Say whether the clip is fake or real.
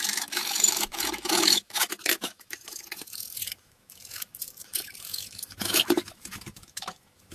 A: fake